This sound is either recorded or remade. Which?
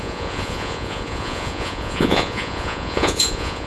remade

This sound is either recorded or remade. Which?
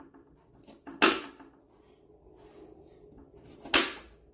recorded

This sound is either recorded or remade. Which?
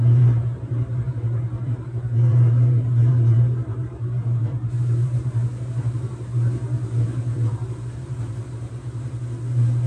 remade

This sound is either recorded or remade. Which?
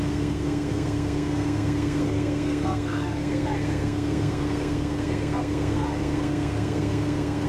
remade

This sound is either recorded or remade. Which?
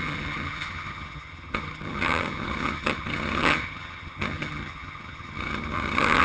remade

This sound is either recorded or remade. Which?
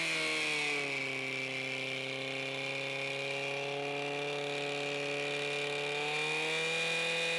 recorded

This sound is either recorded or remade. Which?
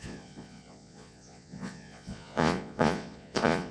remade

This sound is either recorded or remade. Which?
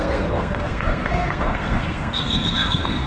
remade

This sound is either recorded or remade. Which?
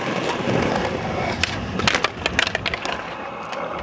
recorded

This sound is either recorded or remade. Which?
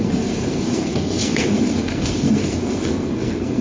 remade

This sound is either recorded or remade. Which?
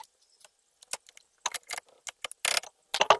recorded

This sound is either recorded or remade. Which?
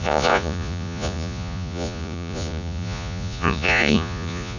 remade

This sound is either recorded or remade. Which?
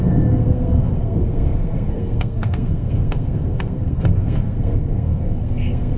remade